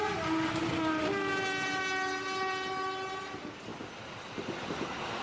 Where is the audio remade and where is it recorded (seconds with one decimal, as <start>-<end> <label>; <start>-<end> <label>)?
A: 0.0-5.2 recorded